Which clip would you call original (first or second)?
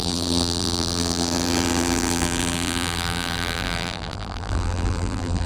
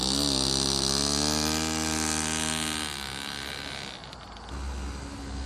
second